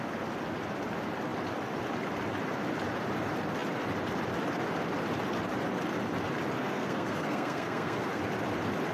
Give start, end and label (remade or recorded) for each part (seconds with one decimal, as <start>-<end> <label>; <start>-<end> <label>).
0.0-6.6 recorded; 6.6-8.2 remade; 8.2-8.9 recorded

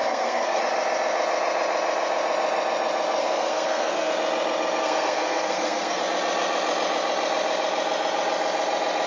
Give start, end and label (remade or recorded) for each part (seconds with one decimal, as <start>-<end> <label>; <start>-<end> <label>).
0.0-0.6 remade; 0.6-3.2 recorded; 3.2-4.1 remade; 4.1-4.8 recorded; 4.8-6.0 remade; 6.0-9.1 recorded

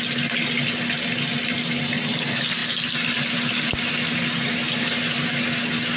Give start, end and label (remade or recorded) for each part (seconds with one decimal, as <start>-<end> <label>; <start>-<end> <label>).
0.0-6.0 recorded

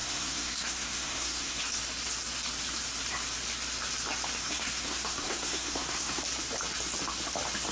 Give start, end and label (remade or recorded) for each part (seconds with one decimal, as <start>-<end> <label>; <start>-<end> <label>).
0.0-1.6 remade; 1.6-4.4 recorded; 4.4-6.2 remade; 6.2-7.7 recorded

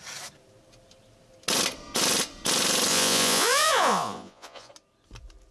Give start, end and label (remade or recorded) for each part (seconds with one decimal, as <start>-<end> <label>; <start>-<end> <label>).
0.0-2.9 recorded; 2.9-4.7 remade; 4.7-5.5 recorded

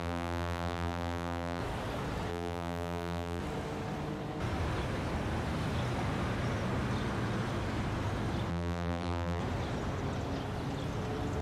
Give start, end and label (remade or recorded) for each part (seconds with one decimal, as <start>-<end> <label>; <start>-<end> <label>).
0.0-1.6 remade; 1.6-2.3 recorded; 2.3-3.4 remade; 3.4-8.5 recorded; 8.5-9.4 remade; 9.4-11.4 recorded

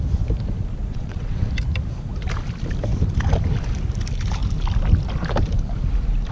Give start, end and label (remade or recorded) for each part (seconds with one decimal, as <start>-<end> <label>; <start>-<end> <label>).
0.0-0.9 recorded; 0.9-1.5 remade; 1.5-6.3 recorded

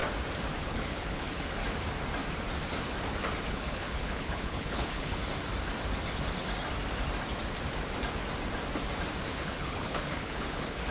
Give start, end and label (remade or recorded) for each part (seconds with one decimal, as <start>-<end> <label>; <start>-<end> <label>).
0.0-0.6 recorded; 0.6-1.6 remade; 1.6-3.5 recorded; 3.5-5.2 remade; 5.2-9.3 recorded; 9.3-10.9 remade